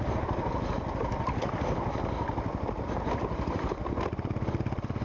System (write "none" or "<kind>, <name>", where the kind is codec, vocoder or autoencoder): none